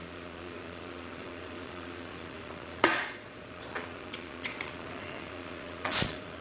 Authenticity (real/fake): fake